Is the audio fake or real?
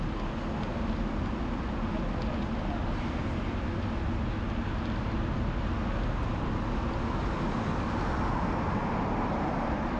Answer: real